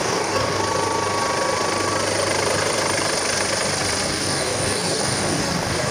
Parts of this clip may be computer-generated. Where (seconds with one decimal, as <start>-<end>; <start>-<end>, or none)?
0.0-0.6; 4.1-5.9